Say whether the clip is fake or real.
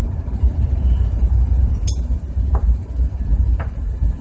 fake